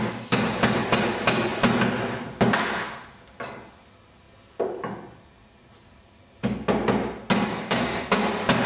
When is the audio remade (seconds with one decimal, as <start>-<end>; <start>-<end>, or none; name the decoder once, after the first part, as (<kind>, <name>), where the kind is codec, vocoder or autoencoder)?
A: 7.5-8.1 (codec, DAC)